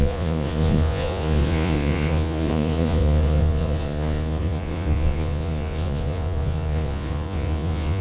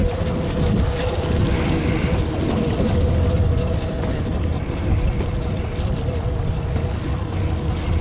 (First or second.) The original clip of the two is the second